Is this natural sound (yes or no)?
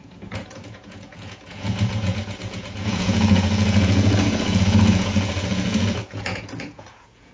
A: no